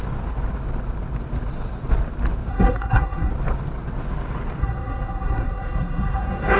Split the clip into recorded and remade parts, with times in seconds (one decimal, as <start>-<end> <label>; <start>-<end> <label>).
0.0-2.5 recorded; 2.5-3.3 remade; 3.3-4.6 recorded; 4.6-6.6 remade